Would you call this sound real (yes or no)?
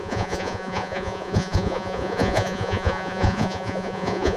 no